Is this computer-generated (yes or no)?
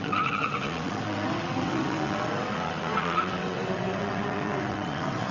yes